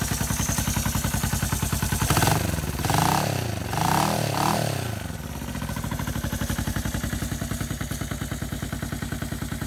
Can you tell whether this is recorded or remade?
recorded